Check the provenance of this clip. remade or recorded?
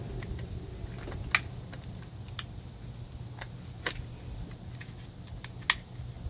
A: recorded